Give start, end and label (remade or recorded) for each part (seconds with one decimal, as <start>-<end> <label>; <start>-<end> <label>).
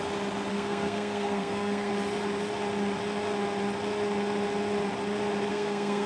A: 0.0-0.5 recorded; 0.5-1.9 remade; 1.9-5.5 recorded; 5.5-6.1 remade